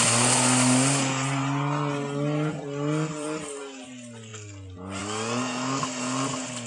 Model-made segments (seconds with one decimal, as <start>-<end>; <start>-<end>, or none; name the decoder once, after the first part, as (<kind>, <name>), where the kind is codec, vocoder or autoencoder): 2.5-3.6 (vocoder, BigVGAN v2); 4.3-5.0